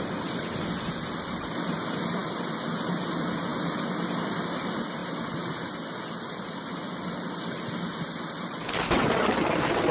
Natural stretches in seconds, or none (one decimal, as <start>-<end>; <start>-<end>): 0.0-9.9